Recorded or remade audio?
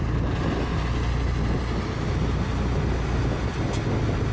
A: recorded